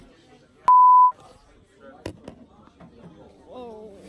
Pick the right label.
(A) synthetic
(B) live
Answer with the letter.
B